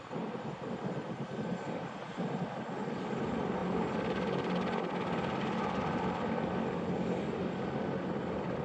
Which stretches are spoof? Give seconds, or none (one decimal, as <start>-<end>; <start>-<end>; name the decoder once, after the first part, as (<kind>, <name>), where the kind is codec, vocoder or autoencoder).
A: none